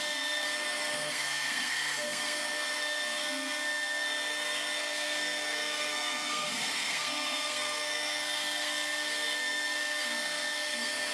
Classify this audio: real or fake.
fake